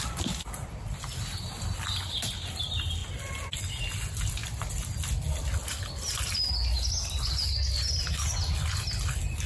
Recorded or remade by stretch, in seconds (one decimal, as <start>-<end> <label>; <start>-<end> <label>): 0.0-9.5 recorded